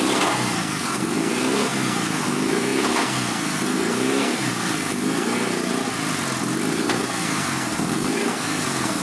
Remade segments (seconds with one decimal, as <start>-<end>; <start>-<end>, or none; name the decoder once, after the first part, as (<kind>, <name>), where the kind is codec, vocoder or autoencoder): 0.0-5.7 (codec, SNAC); 6.7-9.0